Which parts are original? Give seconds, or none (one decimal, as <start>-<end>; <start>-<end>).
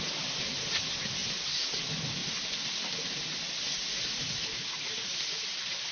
0.0-5.9